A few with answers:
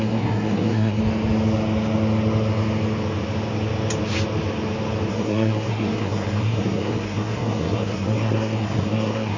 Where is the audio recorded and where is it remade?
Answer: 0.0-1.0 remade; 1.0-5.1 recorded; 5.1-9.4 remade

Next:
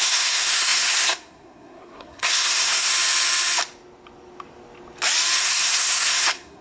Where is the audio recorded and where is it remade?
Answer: 0.0-2.9 remade; 2.9-5.4 recorded; 5.4-6.6 remade

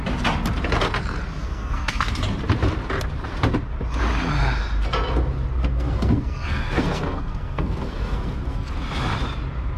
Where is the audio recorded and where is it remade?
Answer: 0.0-1.4 recorded; 1.4-2.1 remade; 2.1-5.6 recorded; 5.6-8.7 remade; 8.7-9.8 recorded